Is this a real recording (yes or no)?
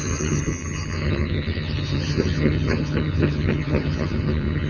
no